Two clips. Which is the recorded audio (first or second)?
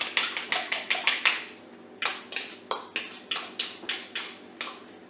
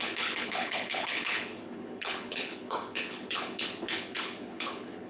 first